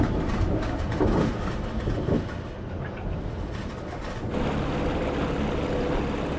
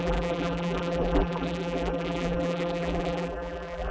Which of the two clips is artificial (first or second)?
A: second